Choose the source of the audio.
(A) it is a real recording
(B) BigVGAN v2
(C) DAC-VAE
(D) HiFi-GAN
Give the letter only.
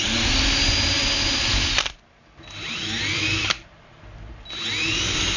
A